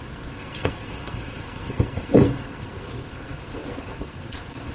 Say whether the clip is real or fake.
fake